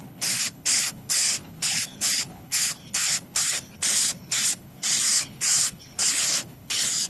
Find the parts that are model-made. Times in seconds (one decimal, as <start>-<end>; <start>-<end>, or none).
0.0-7.1